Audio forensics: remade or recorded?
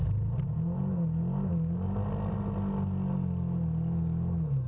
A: recorded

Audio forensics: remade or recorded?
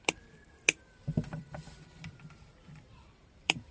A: remade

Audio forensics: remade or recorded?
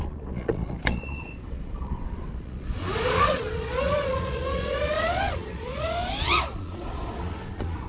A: remade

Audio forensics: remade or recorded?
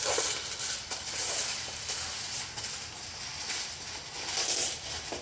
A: recorded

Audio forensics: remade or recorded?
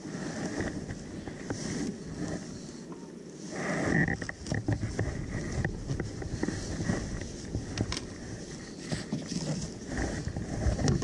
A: recorded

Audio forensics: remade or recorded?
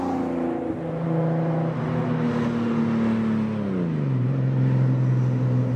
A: recorded